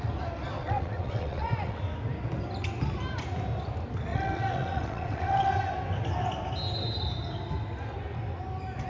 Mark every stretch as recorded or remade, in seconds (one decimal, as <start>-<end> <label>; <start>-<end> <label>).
0.0-0.6 recorded; 0.6-1.8 remade; 1.8-4.1 recorded; 4.1-5.5 remade; 5.5-8.9 recorded